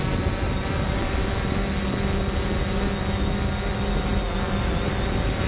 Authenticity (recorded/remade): recorded